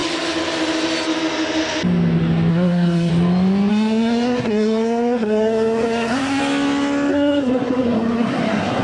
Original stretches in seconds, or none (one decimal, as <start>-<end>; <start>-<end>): 0.0-2.5; 3.1-3.7; 6.4-7.1